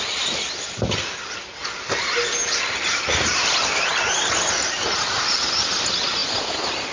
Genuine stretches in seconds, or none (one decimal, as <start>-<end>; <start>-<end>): 0.0-6.9